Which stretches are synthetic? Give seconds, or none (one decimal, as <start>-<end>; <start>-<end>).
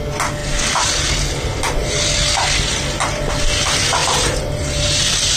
0.4-1.1; 1.5-2.0; 4.0-5.0